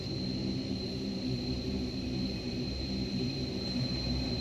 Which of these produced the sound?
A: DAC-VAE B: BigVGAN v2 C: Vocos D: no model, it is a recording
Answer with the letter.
B